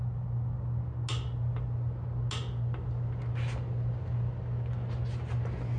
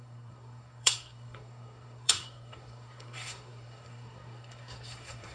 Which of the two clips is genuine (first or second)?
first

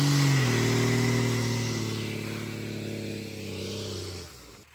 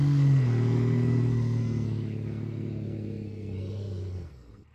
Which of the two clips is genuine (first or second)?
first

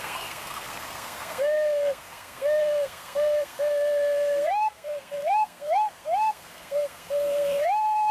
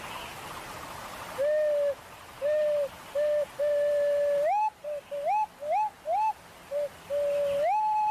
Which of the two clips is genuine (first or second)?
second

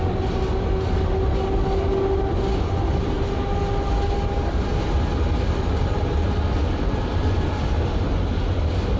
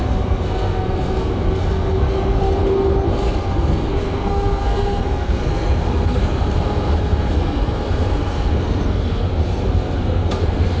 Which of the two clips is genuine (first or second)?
first